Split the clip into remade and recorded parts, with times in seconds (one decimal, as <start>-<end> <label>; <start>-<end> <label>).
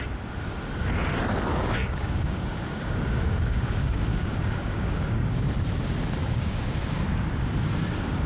0.0-1.5 recorded; 1.5-5.5 remade; 5.5-6.2 recorded; 6.2-6.8 remade; 6.8-8.3 recorded